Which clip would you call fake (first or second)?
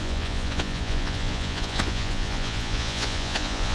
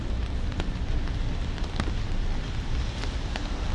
first